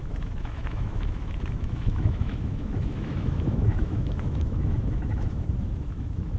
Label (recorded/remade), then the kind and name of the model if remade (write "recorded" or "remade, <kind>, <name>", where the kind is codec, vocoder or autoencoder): remade, autoencoder, DAC-VAE